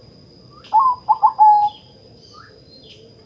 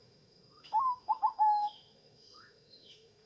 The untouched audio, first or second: first